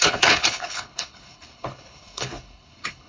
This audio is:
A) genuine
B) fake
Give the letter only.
B